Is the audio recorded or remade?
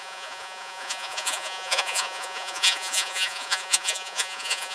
remade